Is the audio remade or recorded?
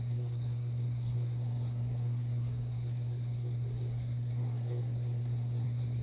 remade